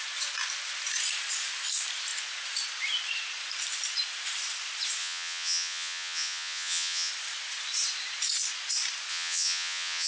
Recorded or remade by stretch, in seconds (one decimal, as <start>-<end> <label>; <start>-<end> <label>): 0.0-5.0 recorded; 5.0-7.1 remade; 7.1-9.1 recorded; 9.1-10.1 remade